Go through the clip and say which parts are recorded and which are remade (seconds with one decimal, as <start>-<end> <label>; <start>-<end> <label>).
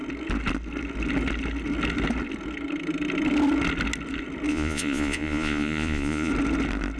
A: 0.0-4.5 recorded; 4.5-6.3 remade; 6.3-7.0 recorded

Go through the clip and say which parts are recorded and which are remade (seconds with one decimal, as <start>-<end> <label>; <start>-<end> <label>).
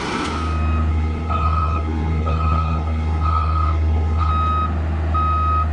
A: 0.0-0.9 recorded; 0.9-4.3 remade; 4.3-5.7 recorded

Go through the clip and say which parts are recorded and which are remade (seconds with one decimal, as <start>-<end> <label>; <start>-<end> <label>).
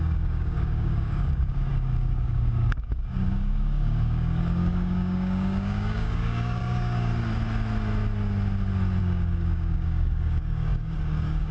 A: 0.0-7.1 remade; 7.1-9.0 recorded; 9.0-11.5 remade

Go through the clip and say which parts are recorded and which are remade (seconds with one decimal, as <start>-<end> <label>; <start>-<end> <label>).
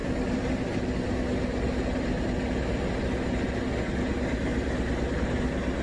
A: 0.0-5.8 recorded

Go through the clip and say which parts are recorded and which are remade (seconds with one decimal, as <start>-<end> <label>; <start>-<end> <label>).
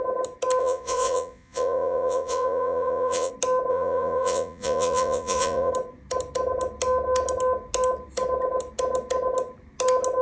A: 0.0-0.6 recorded; 0.6-3.3 remade; 3.3-3.7 recorded; 3.7-5.7 remade; 5.7-10.2 recorded